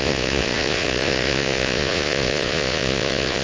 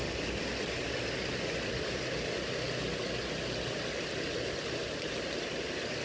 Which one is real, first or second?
second